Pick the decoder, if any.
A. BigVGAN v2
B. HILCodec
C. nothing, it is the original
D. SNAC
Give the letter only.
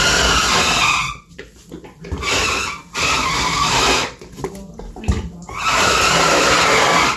C